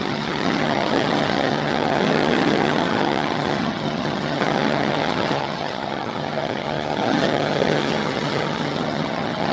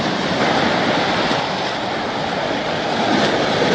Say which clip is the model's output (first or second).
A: first